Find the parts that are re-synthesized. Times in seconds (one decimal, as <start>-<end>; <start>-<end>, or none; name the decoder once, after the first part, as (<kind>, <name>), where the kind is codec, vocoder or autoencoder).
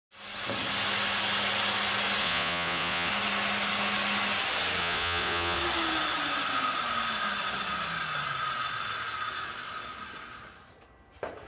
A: 2.2-3.1 (vocoder, Vocos); 4.8-5.6